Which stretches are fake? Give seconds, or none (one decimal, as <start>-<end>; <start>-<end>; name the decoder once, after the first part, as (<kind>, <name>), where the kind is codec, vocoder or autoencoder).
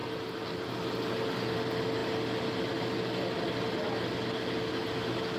none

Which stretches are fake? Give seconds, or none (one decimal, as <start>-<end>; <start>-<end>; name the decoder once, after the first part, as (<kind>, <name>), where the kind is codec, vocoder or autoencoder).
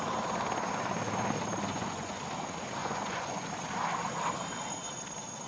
1.7-2.2 (vocoder, Vocos); 2.8-3.5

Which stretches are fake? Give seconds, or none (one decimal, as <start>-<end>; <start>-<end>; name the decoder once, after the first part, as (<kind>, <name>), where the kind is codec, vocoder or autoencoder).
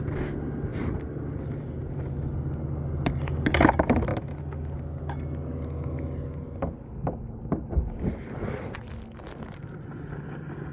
none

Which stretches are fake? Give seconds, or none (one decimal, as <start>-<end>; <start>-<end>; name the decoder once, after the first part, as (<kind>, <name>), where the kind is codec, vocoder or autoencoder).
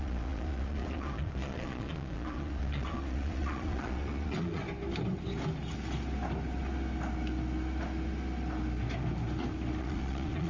0.0-4.6 (vocoder, Vocos); 9.8-10.5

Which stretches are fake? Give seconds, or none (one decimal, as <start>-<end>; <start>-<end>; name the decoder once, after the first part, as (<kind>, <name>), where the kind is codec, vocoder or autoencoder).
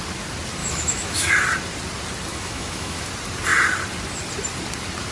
0.6-1.3 (autoencoder, DAC-VAE); 2.3-3.1